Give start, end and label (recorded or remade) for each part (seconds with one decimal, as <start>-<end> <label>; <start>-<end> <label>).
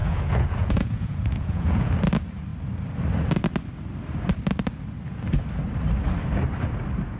0.0-1.9 remade; 1.9-7.2 recorded